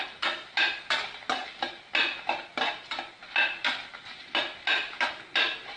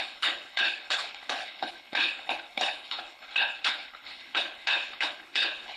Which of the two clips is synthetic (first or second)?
second